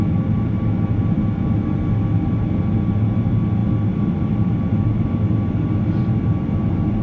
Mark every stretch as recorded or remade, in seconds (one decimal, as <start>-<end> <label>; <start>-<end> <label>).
0.0-7.0 recorded